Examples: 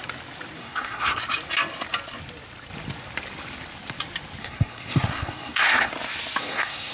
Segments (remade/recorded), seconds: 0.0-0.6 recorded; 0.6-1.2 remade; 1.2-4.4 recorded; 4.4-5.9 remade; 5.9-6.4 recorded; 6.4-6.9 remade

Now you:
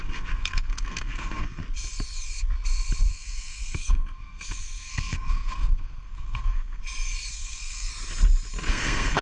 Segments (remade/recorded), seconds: 0.0-1.6 remade; 1.6-3.1 recorded; 3.1-6.8 remade; 6.8-7.3 recorded; 7.3-7.9 remade; 7.9-8.7 recorded; 8.7-9.2 remade

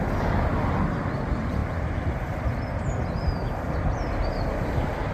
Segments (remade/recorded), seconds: 0.0-5.1 recorded

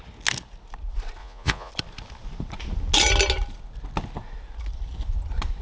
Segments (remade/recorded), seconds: 0.0-1.2 recorded; 1.2-1.7 remade; 1.7-5.6 recorded

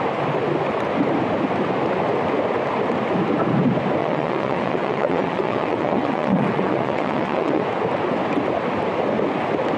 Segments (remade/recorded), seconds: 0.0-4.0 recorded; 4.0-7.6 remade; 7.6-9.8 recorded

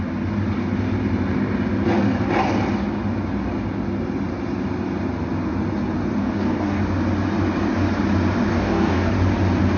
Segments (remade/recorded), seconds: 0.0-6.2 recorded; 6.2-6.8 remade; 6.8-8.5 recorded; 8.5-9.1 remade; 9.1-9.8 recorded

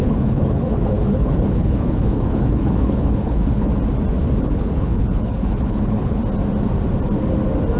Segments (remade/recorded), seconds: 0.0-3.7 remade; 3.7-4.4 recorded; 4.4-6.2 remade; 6.2-7.8 recorded